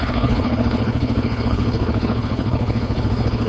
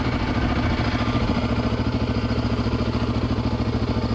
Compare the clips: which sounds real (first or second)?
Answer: second